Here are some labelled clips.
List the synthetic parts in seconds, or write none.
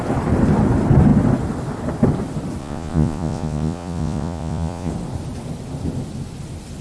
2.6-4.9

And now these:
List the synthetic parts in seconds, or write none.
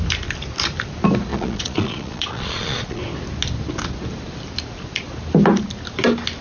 1.3-3.0